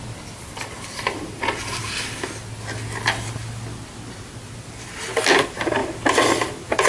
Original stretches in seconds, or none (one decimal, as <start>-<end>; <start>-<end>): 0.0-6.9

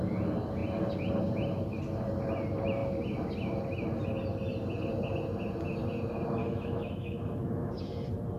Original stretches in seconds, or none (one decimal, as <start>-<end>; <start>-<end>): 0.0-6.4; 7.7-8.4

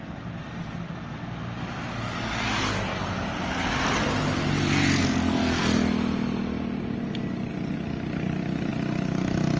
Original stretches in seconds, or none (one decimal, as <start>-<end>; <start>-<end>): 0.0-9.6

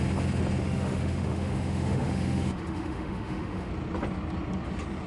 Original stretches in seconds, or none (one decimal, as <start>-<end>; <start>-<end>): 0.0-0.6; 3.7-5.1

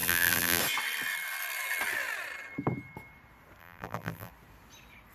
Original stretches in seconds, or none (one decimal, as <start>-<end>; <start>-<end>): 0.6-3.6; 4.3-5.1